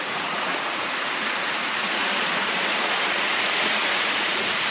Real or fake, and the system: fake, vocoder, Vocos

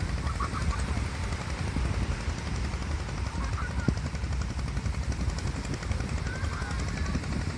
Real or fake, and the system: real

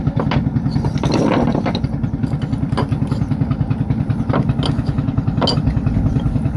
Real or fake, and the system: real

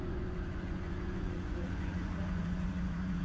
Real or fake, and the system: fake, vocoder, Vocos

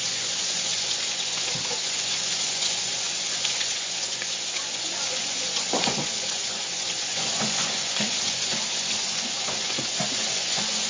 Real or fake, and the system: fake, vocoder, Vocos